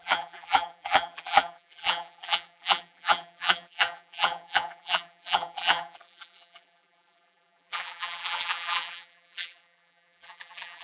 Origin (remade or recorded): remade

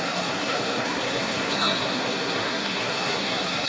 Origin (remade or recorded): remade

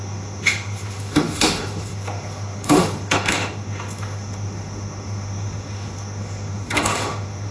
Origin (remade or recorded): remade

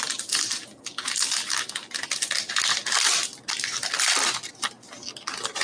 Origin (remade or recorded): recorded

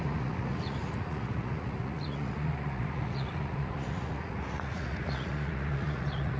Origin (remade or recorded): remade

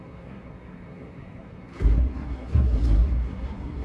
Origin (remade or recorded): remade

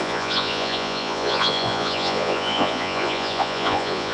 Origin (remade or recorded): remade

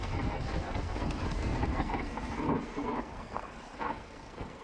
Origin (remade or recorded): remade